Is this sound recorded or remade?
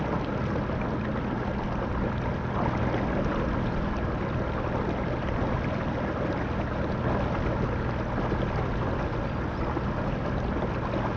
recorded